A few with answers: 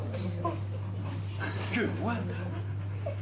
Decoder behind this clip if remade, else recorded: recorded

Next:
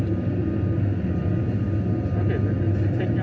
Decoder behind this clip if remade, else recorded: recorded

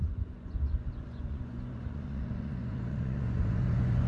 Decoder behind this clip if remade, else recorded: remade, vocoder, Vocos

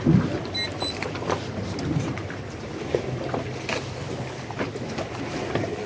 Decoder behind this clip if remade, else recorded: recorded